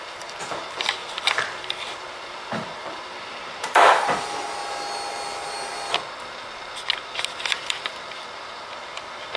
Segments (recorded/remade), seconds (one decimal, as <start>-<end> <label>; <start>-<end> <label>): 0.0-4.6 remade; 4.6-7.5 recorded; 7.5-9.4 remade